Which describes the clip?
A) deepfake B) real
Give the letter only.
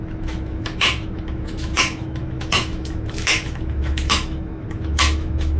A